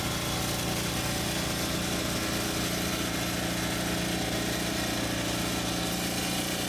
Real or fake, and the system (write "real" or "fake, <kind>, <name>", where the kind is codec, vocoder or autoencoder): real